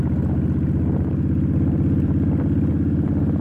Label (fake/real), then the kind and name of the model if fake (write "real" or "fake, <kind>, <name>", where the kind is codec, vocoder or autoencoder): real